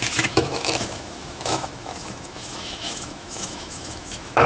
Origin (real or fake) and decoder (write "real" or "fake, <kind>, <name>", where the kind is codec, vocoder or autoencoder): fake, autoencoder, DAC-VAE